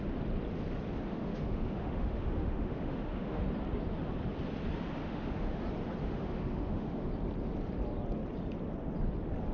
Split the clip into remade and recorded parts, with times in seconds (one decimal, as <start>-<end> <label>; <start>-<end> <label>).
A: 0.0-1.1 recorded; 1.1-3.5 remade; 3.5-5.0 recorded; 5.0-5.6 remade; 5.6-6.0 recorded; 6.0-7.1 remade; 7.1-9.5 recorded